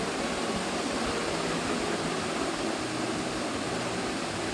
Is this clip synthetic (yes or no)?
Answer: no